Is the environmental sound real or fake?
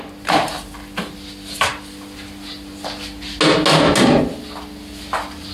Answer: real